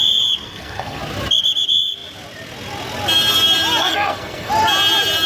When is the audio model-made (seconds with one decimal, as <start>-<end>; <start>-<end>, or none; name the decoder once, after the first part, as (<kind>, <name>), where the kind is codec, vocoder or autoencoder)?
0.4-1.0 (codec, SNAC); 3.8-4.5